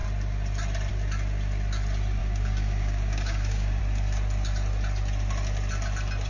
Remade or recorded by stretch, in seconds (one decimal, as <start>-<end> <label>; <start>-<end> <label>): 0.0-2.2 recorded; 2.2-3.8 remade; 3.8-6.3 recorded